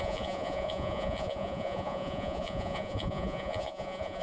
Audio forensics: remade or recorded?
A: remade